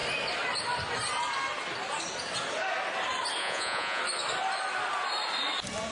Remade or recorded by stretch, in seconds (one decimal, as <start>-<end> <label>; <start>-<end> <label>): 0.0-3.4 recorded; 3.4-4.0 remade; 4.0-5.9 recorded

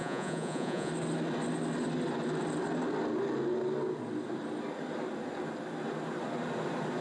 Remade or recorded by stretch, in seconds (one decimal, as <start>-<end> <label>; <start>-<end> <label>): 0.0-0.9 remade; 0.9-7.0 recorded

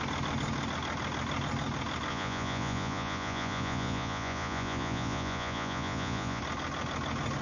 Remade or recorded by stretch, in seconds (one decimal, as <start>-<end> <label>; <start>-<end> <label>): 0.0-2.1 recorded; 2.1-6.4 remade; 6.4-7.4 recorded